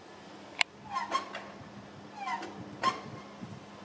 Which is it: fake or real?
real